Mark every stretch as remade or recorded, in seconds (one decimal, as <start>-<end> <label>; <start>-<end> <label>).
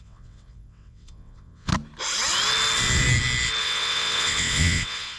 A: 0.0-1.7 remade; 1.7-3.6 recorded; 3.6-5.2 remade